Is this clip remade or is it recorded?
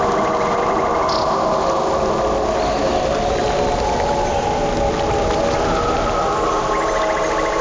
recorded